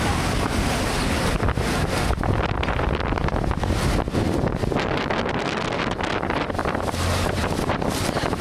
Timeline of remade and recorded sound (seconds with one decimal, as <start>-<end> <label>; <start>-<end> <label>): 0.0-6.6 recorded; 6.6-7.9 remade; 7.9-8.4 recorded